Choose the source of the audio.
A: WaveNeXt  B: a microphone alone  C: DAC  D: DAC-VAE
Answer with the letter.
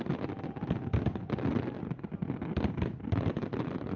B